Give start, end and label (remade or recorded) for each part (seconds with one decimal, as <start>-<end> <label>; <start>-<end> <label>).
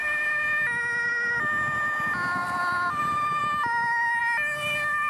0.0-5.1 recorded